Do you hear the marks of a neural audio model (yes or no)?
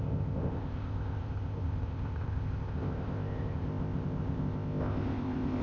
yes